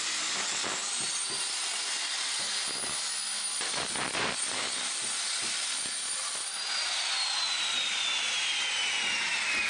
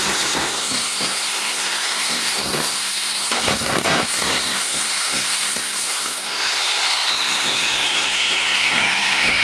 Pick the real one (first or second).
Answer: first